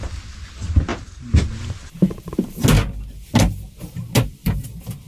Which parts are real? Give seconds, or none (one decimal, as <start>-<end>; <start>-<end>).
0.0-5.1